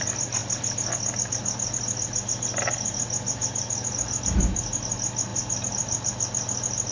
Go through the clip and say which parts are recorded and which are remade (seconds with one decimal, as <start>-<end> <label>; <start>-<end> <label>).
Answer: 0.0-6.9 recorded